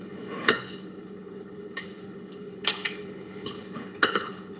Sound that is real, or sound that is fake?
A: fake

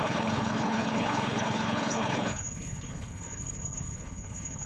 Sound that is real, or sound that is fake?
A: fake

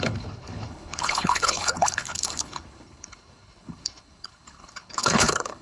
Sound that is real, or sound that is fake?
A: fake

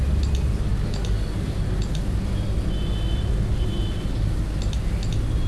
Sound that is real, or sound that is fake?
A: real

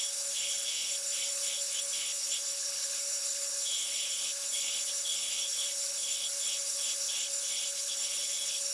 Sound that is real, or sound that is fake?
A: fake